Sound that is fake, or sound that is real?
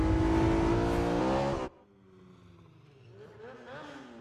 real